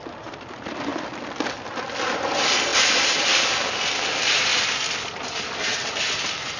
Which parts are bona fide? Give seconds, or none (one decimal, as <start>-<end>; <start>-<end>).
none